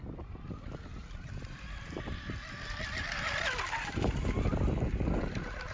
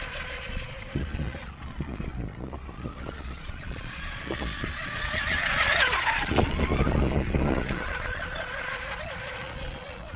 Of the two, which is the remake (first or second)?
second